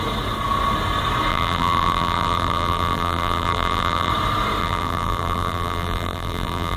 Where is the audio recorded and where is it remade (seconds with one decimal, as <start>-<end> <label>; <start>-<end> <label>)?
0.0-1.3 recorded; 1.3-4.1 remade; 4.1-4.6 recorded; 4.6-6.8 remade